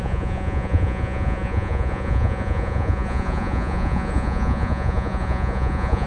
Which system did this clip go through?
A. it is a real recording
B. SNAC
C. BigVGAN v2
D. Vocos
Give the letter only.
D